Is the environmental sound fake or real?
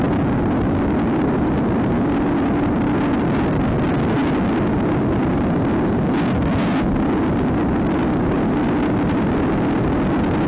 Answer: real